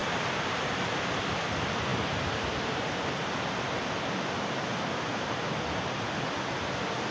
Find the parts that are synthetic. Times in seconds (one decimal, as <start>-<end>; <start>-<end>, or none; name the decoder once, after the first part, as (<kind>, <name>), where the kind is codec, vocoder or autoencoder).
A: none